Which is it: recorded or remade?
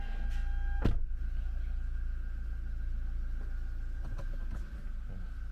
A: recorded